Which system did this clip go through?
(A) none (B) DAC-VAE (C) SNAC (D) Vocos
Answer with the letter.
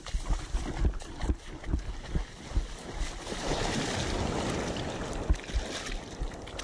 A